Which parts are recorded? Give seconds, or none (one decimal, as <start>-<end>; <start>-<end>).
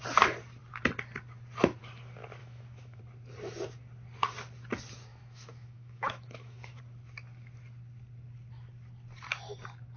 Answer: 0.0-2.4; 3.0-5.1; 6.8-10.0